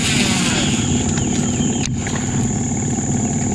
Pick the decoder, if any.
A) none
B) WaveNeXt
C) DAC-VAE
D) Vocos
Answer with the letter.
A